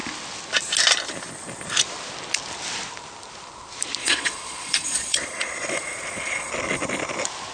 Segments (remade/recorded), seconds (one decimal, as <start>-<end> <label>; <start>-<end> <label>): 0.0-4.0 recorded; 4.0-6.5 remade; 6.5-7.5 recorded